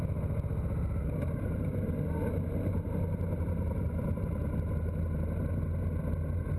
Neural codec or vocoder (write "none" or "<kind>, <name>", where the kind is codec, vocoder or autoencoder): none